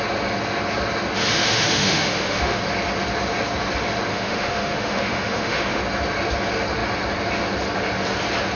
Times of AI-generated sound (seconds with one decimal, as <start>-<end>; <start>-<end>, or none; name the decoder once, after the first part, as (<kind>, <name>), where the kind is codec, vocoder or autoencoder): 1.3-2.6 (autoencoder, DAC-VAE); 4.1-5.8